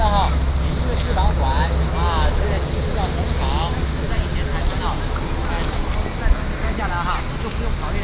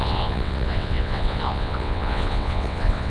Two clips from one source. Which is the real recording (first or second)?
first